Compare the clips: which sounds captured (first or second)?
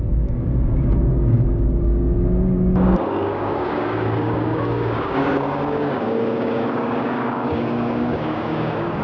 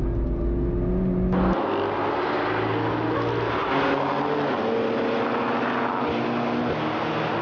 second